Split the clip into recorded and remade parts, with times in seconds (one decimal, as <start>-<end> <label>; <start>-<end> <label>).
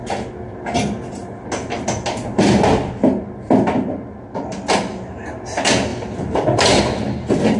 0.0-5.9 recorded; 5.9-6.8 remade; 6.8-7.6 recorded